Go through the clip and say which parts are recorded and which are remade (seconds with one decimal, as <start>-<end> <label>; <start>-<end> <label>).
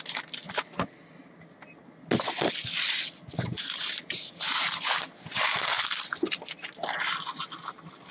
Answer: 0.0-8.1 recorded